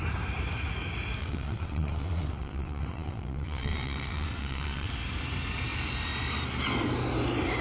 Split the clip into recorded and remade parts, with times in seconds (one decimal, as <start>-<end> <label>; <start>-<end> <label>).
0.0-1.2 recorded; 1.2-4.9 remade; 4.9-7.6 recorded